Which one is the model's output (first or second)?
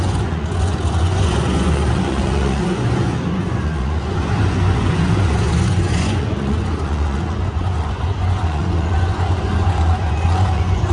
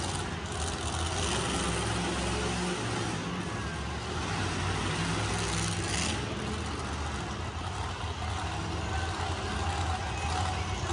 first